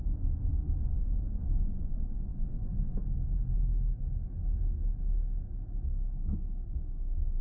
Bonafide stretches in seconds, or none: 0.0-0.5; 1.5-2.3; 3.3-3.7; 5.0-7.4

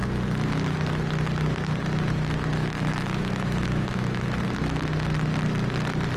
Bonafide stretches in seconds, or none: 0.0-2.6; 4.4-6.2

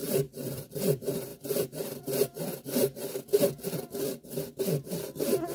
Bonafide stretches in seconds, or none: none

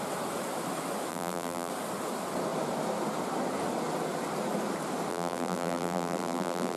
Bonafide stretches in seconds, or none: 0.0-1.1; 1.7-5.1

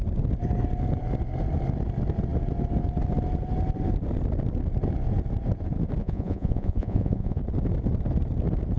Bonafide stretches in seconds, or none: 0.0-6.0; 7.4-8.8

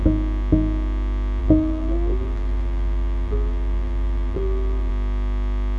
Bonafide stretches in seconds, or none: 0.0-1.4; 4.9-5.8